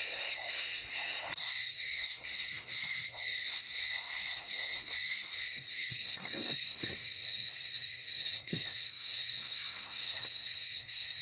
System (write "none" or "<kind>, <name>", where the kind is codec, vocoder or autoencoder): codec, SNAC